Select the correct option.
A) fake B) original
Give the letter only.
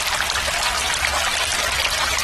B